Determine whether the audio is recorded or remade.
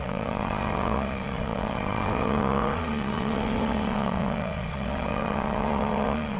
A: remade